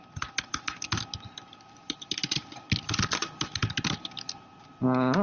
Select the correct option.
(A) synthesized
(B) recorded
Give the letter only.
B